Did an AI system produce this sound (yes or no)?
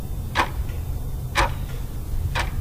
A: yes